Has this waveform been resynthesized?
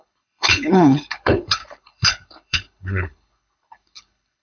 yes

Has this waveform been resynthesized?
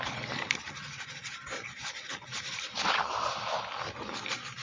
yes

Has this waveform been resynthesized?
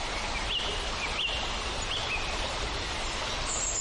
no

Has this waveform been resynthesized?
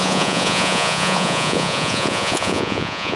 yes